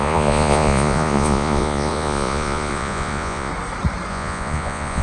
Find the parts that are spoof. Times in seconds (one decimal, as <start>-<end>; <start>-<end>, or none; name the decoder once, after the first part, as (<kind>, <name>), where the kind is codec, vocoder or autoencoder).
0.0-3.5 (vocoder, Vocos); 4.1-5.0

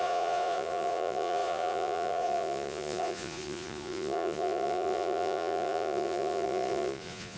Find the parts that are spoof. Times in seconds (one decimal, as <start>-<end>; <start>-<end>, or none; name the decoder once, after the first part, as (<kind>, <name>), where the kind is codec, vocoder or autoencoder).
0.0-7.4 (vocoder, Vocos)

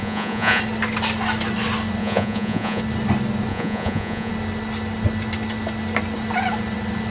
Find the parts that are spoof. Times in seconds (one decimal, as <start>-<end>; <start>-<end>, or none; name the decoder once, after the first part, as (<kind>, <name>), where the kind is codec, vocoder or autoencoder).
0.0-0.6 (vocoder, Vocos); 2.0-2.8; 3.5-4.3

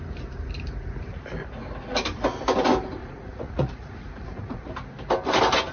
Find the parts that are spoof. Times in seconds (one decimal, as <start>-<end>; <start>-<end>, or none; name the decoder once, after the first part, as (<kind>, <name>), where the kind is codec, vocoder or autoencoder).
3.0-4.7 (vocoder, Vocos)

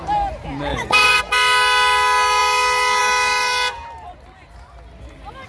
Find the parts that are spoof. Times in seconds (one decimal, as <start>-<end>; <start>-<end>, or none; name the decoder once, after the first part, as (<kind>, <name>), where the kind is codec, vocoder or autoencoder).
0.7-1.2 (vocoder, Vocos)